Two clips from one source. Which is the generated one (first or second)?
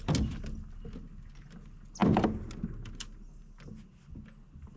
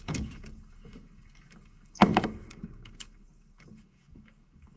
second